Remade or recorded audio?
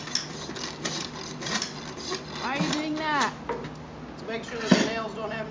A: recorded